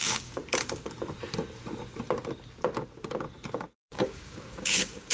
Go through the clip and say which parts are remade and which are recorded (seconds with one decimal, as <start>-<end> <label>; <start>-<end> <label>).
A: 0.0-0.4 remade; 0.4-3.5 recorded; 3.5-5.1 remade